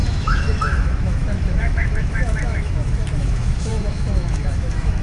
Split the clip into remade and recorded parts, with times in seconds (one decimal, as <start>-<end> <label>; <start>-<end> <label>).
0.0-5.0 remade